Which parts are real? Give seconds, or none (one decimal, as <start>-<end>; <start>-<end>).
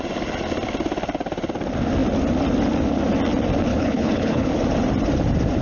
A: 0.0-3.7; 4.5-5.6